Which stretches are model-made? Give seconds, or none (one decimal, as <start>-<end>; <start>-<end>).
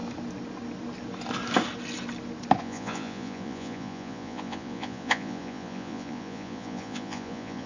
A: 2.6-7.7